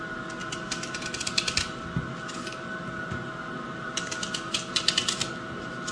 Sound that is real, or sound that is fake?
real